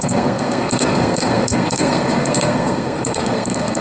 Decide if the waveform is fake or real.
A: fake